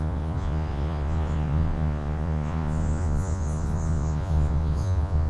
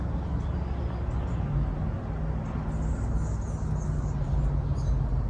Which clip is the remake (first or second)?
first